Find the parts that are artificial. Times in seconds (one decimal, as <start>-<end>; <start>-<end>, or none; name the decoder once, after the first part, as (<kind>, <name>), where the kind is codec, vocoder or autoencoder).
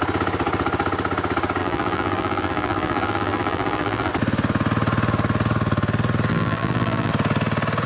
1.6-4.1 (vocoder, BigVGAN v2); 6.3-7.1